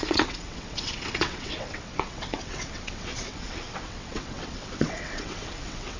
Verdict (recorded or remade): remade